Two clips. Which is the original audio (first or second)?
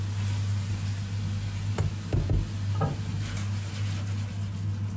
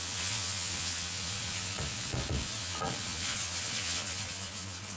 first